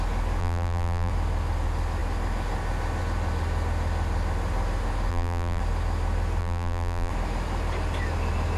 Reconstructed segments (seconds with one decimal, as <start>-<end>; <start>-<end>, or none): 0.4-1.1; 5.1-5.6; 6.4-7.1